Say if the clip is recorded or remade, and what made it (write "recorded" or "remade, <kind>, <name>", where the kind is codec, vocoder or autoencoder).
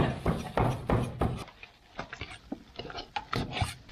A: recorded